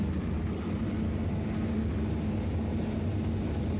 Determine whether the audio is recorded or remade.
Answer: recorded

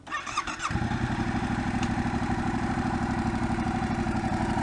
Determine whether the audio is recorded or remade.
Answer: remade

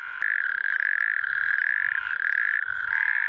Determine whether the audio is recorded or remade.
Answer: recorded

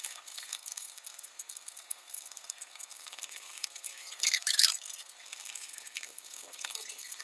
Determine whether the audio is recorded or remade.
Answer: remade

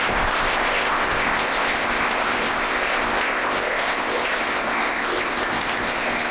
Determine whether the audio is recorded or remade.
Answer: remade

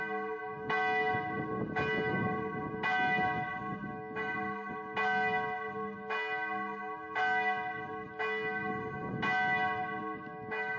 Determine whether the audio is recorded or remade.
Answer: recorded